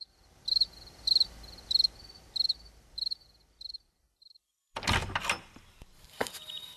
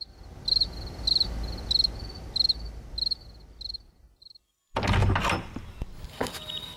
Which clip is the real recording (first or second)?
second